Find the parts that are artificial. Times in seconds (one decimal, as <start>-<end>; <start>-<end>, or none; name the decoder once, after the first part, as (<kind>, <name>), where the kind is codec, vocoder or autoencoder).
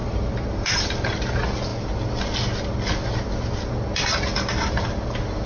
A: 0.0-1.2 (vocoder, BigVGAN v2)